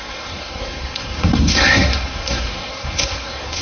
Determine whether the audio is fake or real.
fake